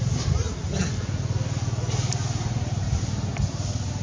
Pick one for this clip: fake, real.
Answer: real